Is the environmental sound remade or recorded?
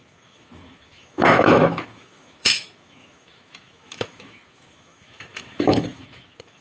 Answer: remade